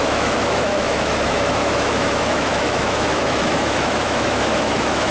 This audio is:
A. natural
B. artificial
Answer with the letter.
B